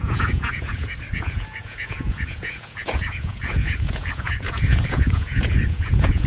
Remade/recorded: remade